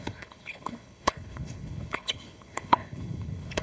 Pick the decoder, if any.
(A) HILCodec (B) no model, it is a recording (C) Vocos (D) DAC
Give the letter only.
A